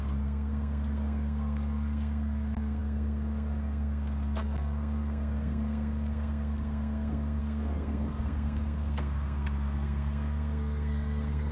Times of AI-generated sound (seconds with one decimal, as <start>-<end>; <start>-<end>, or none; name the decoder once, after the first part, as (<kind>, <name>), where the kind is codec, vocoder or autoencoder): 0.0-11.5 (codec, SNAC)